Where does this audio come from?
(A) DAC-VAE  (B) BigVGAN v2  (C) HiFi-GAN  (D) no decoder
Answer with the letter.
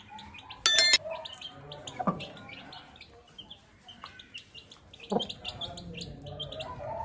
D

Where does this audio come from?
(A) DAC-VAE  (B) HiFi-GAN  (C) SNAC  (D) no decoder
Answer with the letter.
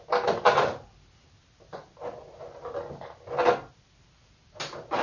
D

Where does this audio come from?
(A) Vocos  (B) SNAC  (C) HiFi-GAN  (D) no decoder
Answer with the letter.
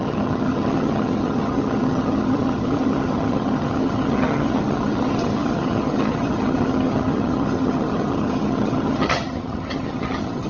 C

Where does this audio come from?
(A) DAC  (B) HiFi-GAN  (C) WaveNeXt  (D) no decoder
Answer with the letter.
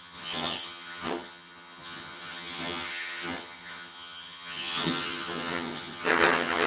B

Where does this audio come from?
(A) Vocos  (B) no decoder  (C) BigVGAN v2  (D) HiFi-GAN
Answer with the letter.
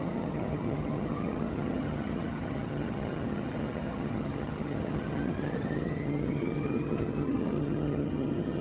D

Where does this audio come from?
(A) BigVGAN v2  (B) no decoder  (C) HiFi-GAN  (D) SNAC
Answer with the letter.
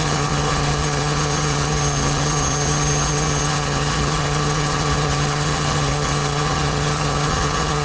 C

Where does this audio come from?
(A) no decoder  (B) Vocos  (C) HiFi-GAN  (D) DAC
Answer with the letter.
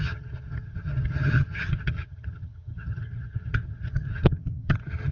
C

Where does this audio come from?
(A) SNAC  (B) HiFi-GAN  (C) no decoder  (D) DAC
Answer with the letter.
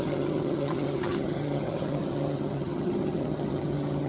B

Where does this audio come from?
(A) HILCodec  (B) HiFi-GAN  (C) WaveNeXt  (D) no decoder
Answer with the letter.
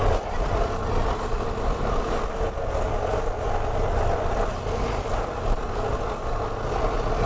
D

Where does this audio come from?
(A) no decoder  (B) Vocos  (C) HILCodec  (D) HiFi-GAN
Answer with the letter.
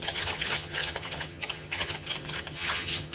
D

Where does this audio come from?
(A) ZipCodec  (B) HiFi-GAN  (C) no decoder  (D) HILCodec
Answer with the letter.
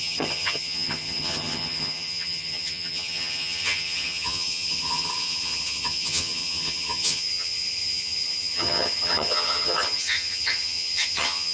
B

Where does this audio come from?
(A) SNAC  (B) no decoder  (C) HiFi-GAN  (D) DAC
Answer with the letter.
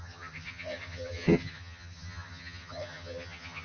C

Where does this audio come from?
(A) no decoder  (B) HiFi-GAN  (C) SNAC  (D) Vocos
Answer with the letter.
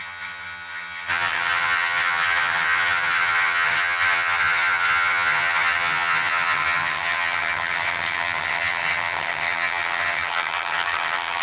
B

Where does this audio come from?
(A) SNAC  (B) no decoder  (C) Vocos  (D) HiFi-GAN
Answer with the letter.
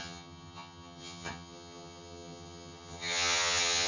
D